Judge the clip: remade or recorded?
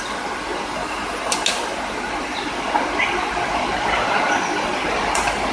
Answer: recorded